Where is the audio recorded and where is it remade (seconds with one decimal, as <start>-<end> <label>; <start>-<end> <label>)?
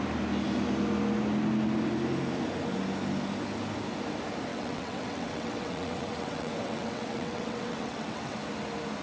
0.0-4.5 recorded; 4.5-8.4 remade; 8.4-9.0 recorded